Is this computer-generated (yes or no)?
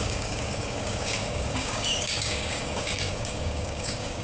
yes